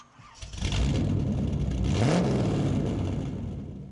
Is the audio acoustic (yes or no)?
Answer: yes